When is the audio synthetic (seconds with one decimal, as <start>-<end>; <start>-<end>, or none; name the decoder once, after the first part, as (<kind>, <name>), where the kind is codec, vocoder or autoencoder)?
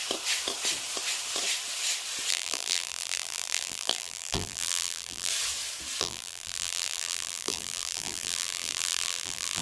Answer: 2.3-5.3 (vocoder, BigVGAN v2); 6.0-9.6